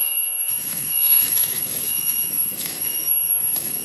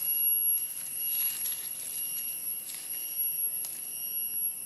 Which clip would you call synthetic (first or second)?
first